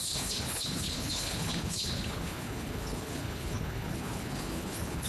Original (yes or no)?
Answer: no